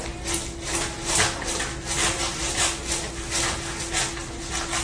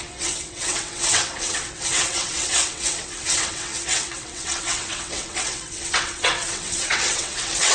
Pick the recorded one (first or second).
first